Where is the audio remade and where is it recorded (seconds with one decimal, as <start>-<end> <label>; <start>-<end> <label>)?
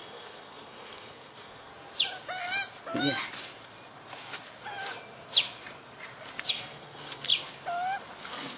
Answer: 0.0-1.7 remade; 1.7-6.5 recorded; 6.5-7.3 remade; 7.3-8.2 recorded; 8.2-8.6 remade